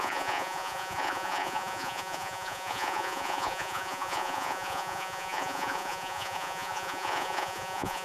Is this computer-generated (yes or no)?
yes